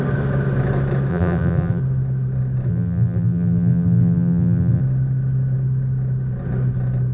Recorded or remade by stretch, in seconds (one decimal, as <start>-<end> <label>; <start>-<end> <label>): 0.0-1.1 recorded; 1.1-1.8 remade; 1.8-2.7 recorded; 2.7-4.8 remade; 4.8-7.1 recorded